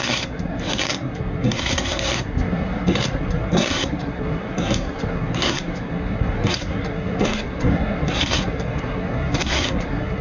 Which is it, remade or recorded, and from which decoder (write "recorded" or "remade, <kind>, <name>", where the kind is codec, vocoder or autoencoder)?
remade, codec, SNAC